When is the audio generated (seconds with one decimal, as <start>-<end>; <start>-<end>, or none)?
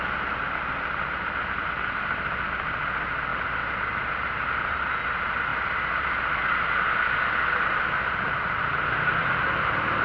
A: none